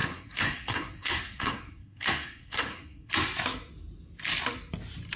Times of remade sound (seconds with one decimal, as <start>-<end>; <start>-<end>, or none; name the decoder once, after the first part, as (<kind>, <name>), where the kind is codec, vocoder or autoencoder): 0.0-3.1 (codec, SNAC)